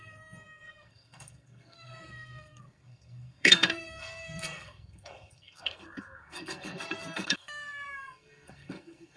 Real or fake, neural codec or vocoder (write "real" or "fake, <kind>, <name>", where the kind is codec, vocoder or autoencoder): fake, codec, SNAC